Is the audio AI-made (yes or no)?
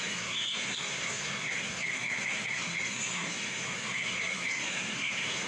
yes